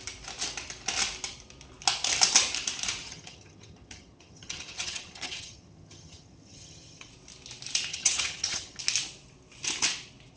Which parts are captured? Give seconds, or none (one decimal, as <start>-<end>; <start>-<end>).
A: 0.0-3.0; 7.1-7.9; 8.8-10.4